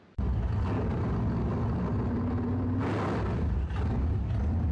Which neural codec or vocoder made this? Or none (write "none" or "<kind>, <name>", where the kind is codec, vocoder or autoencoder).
none